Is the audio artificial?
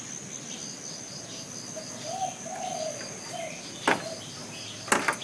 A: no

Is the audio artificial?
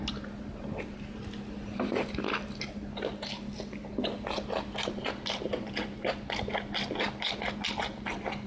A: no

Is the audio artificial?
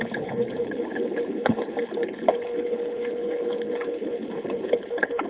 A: yes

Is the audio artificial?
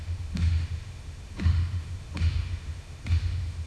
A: yes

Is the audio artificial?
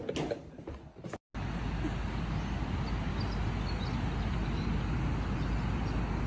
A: no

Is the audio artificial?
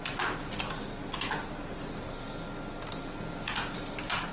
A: no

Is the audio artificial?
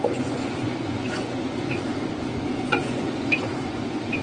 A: yes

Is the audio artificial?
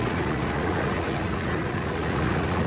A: yes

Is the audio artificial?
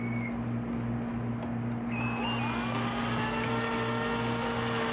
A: no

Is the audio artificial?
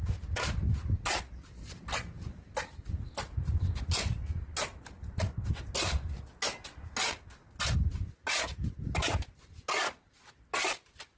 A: no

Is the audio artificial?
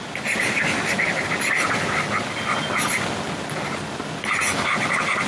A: no